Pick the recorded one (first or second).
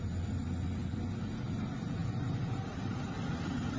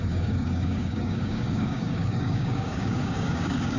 first